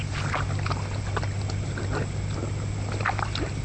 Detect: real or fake real